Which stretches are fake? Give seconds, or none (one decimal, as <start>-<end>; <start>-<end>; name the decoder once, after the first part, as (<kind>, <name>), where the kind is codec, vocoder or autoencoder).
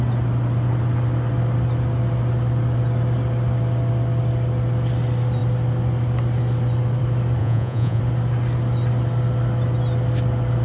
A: 7.4-8.0 (vocoder, Vocos)